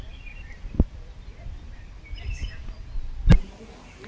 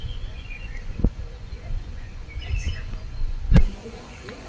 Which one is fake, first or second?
second